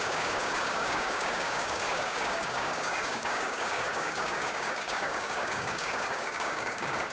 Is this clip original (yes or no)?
no